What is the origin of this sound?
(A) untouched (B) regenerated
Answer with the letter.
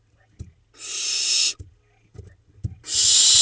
A